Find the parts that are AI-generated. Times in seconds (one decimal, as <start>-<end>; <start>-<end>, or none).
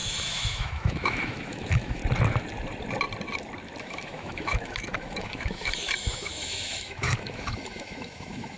0.0-2.0; 3.8-8.6